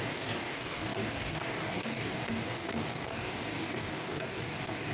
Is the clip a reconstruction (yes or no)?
yes